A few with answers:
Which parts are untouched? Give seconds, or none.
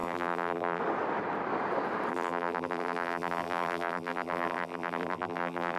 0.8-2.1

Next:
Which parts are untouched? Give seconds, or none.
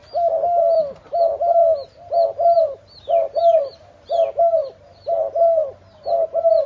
0.0-6.7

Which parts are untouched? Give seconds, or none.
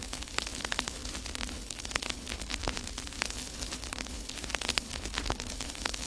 1.0-1.5; 2.6-3.2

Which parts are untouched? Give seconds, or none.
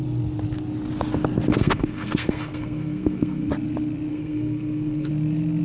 0.0-1.5; 3.5-4.1; 5.1-5.6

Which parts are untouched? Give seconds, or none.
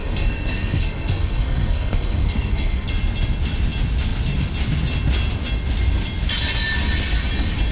2.9-7.7